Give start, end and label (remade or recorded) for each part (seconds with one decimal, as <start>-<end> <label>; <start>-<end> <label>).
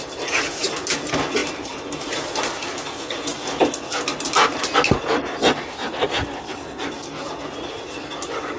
0.0-1.4 recorded; 1.4-2.3 remade; 2.3-8.6 recorded